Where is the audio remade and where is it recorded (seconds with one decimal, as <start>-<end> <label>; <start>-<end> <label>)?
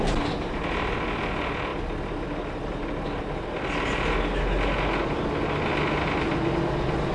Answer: 0.0-7.1 recorded